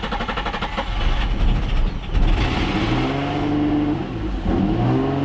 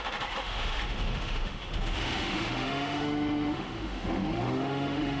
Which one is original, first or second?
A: first